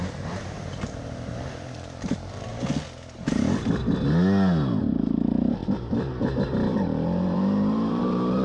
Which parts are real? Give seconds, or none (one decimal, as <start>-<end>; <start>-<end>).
2.5-4.8